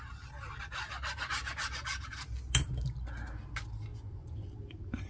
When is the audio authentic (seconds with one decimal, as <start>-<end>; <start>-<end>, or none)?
0.0-3.9; 4.6-5.1